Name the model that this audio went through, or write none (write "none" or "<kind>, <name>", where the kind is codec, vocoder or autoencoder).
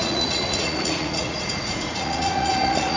vocoder, Vocos